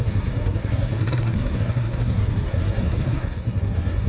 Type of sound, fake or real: fake